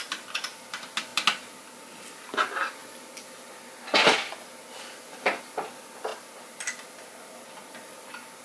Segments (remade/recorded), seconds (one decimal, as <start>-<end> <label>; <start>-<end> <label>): 0.0-8.4 recorded